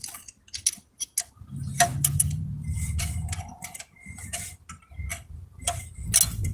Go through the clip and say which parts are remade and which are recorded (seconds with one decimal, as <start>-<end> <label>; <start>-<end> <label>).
0.0-1.9 recorded; 1.9-3.1 remade; 3.1-5.1 recorded; 5.1-6.0 remade; 6.0-6.5 recorded